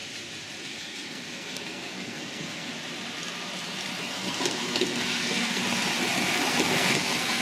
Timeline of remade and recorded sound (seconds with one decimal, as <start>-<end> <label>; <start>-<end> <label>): 0.0-0.6 recorded; 0.6-2.7 remade; 2.7-4.0 recorded; 4.0-5.6 remade; 5.6-6.5 recorded; 6.5-7.4 remade